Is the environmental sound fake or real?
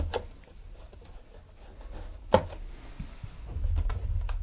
real